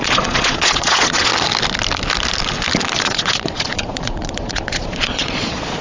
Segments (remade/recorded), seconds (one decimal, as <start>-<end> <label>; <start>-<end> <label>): 0.0-1.3 remade; 1.3-3.0 recorded; 3.0-5.8 remade